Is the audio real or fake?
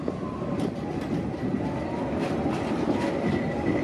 real